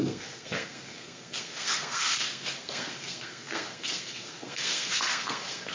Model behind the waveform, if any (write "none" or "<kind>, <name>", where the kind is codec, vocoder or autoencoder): codec, SNAC